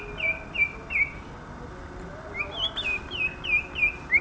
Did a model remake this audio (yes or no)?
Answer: no